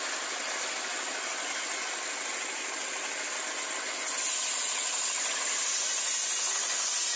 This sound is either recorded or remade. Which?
recorded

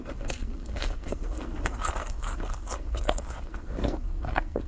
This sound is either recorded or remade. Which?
remade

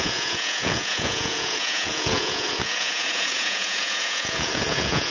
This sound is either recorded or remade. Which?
remade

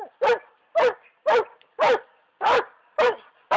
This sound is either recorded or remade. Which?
recorded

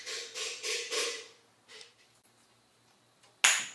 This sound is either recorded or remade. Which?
recorded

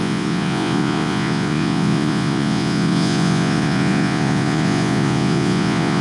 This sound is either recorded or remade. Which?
remade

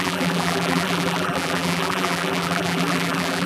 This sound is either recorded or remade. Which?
remade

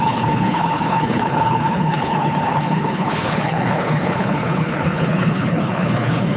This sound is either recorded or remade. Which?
remade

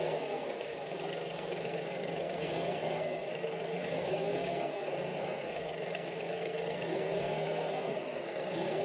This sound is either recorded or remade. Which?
remade